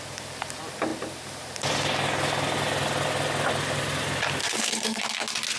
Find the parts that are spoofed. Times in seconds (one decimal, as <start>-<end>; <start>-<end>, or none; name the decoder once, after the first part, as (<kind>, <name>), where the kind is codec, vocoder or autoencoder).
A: 4.4-5.0 (codec, SNAC)